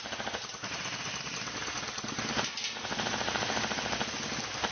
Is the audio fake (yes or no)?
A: no